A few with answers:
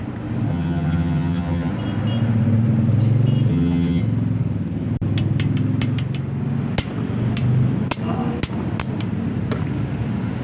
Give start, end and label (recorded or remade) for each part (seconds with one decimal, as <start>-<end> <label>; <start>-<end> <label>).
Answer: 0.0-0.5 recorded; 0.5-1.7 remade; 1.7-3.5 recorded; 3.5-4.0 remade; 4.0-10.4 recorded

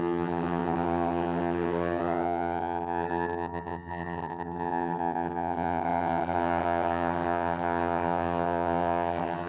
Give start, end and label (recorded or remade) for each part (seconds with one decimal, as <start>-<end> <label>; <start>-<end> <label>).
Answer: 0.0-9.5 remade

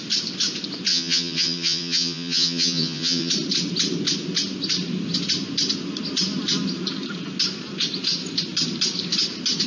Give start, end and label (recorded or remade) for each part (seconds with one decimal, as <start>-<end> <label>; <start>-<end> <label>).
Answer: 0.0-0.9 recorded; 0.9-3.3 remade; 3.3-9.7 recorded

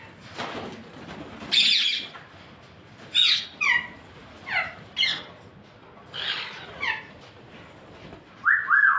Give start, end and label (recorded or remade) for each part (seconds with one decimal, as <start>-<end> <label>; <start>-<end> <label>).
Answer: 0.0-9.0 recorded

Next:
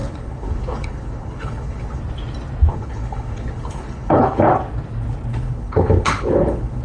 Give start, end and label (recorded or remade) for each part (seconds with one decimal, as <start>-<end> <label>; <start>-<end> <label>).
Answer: 0.0-2.0 remade; 2.0-2.7 recorded; 2.7-4.5 remade; 4.5-5.3 recorded; 5.3-6.8 remade

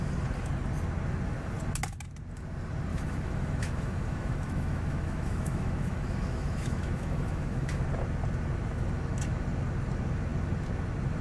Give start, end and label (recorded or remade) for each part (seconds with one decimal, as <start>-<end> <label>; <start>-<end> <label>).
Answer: 0.0-2.9 recorded; 2.9-7.8 remade; 7.8-11.2 recorded